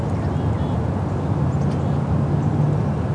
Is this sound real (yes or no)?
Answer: yes